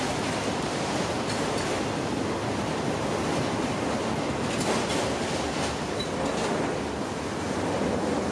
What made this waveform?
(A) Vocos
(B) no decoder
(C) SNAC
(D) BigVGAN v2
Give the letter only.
B